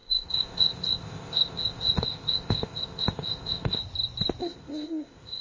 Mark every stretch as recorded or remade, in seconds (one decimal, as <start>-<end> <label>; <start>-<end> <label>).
0.0-3.8 remade; 3.8-4.4 recorded; 4.4-5.4 remade